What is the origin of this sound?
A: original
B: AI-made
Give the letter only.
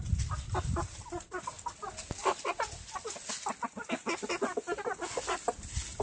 A